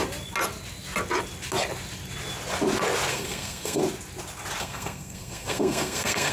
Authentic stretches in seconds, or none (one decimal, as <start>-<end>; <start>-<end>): 0.0-3.1; 3.8-4.6